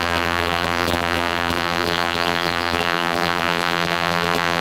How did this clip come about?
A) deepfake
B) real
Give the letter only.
A